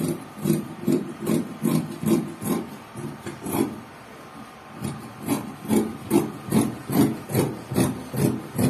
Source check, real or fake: fake